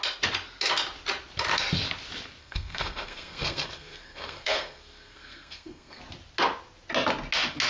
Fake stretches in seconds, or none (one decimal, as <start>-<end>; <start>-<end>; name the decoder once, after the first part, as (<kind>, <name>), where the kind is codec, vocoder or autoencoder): 2.4-6.0 (codec, SNAC)